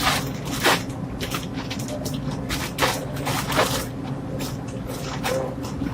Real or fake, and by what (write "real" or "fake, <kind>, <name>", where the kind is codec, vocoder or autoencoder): real